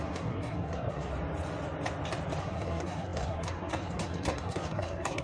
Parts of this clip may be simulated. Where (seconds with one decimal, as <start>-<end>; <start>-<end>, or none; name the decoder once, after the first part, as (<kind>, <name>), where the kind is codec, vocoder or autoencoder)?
0.0-1.1 (codec, SNAC); 2.4-5.2